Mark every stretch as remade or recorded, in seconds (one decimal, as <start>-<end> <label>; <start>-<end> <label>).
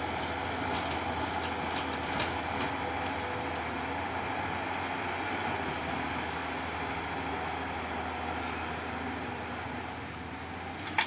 0.0-11.1 recorded